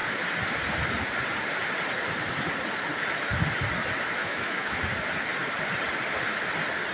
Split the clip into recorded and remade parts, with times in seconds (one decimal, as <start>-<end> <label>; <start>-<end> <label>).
0.0-4.2 recorded; 4.2-4.8 remade; 4.8-6.9 recorded